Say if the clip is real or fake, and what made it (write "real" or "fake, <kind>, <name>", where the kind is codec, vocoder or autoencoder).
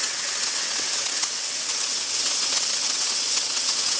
fake, vocoder, WaveNeXt